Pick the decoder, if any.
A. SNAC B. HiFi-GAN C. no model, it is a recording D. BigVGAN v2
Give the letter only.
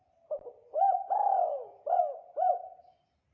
C